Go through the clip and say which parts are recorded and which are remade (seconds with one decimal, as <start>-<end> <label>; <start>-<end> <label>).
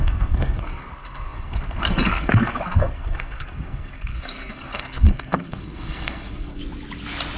0.0-6.6 remade; 6.6-7.4 recorded